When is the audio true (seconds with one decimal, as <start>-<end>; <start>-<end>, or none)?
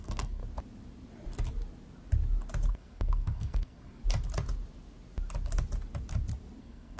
0.4-2.7; 4.0-6.6